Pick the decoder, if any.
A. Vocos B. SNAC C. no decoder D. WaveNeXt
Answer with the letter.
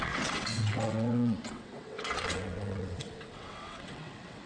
D